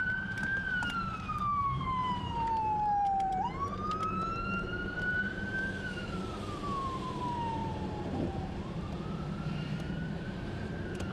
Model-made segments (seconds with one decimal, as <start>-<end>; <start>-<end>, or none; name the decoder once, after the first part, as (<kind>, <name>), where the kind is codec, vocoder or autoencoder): 0.0-11.1 (vocoder, BigVGAN v2)

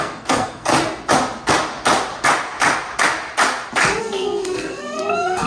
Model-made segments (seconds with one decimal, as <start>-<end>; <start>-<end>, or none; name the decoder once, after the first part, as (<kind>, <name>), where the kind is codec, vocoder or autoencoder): 0.0-0.7 (codec, SNAC); 4.0-5.5